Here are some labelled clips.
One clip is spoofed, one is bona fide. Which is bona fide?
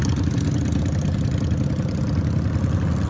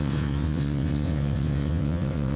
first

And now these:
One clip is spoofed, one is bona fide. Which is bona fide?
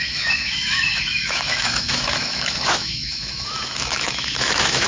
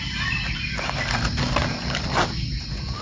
second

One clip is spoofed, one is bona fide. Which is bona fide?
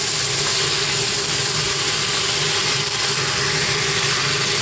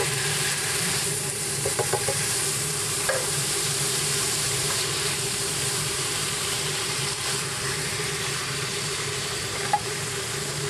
first